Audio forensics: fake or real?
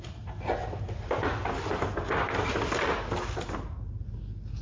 real